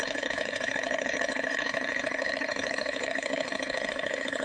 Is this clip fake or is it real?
fake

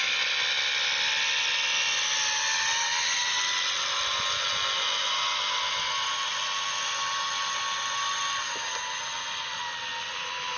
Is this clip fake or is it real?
real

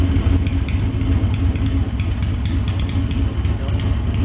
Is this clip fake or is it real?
real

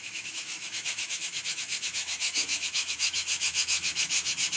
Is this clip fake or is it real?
fake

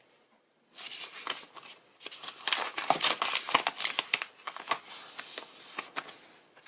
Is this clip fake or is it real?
real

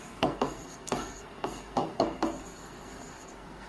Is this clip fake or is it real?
fake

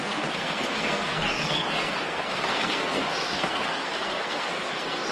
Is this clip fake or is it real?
fake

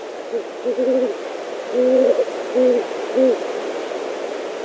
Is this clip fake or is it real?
real